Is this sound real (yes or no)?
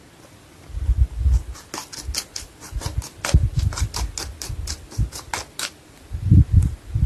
yes